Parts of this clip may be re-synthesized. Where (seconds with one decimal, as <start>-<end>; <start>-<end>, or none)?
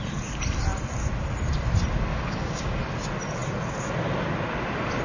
2.1-2.8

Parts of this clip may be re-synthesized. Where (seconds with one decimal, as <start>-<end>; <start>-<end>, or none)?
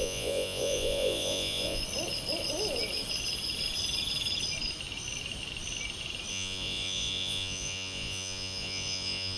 0.0-1.8; 6.3-9.4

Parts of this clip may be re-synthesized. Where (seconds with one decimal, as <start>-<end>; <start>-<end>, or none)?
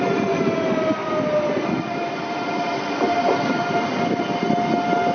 none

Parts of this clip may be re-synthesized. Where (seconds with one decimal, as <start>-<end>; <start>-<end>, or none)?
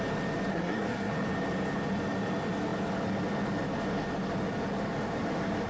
0.5-1.1